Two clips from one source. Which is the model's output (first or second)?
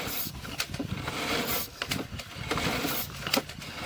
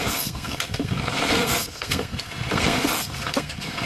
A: second